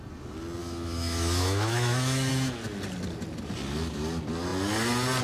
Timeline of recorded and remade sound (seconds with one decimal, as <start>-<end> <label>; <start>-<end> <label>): 0.0-0.6 recorded; 0.6-2.3 remade; 2.3-5.2 recorded